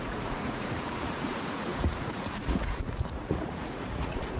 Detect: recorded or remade remade